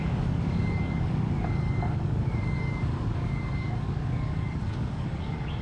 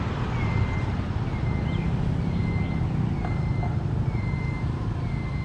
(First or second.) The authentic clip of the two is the second